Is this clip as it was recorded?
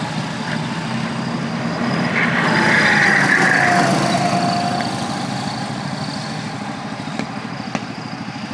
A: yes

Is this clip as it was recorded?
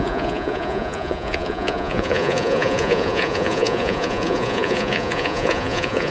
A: no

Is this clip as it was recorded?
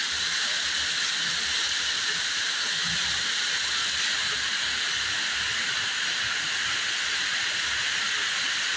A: yes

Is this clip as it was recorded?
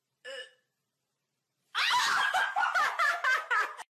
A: no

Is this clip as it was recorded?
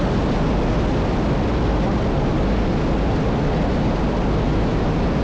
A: yes